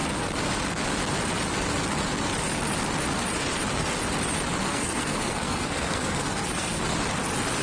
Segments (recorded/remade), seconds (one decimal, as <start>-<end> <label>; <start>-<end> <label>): 0.0-4.6 recorded; 4.6-6.8 remade; 6.8-7.6 recorded